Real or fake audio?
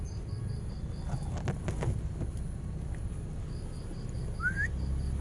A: real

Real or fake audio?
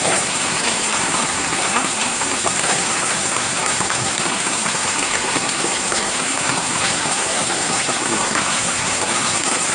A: fake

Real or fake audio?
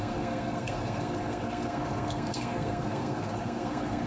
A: fake